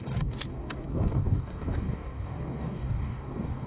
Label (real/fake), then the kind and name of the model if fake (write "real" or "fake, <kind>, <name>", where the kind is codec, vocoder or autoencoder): fake, codec, DAC